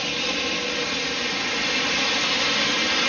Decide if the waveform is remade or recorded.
recorded